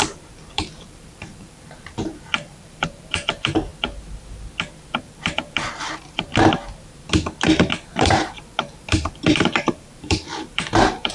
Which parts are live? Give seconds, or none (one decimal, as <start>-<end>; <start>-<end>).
3.7-5.0; 6.3-7.9